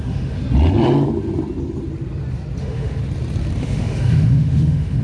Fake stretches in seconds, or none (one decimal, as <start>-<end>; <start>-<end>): 0.0-0.4; 2.6-3.0; 3.6-5.0